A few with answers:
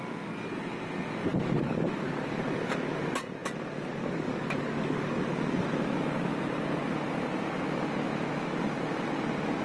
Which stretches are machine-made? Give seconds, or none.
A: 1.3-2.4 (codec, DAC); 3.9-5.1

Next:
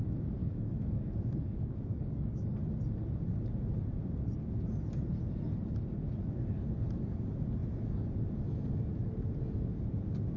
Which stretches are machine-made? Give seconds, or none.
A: 0.4-2.6 (codec, DAC)

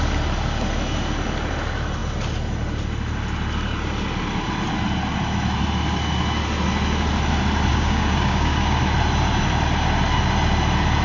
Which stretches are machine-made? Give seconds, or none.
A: 7.7-8.8 (codec, DAC)